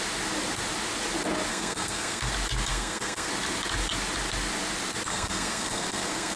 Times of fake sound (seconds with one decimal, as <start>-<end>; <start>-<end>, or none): 1.5-2.3; 2.7-3.3; 5.1-6.4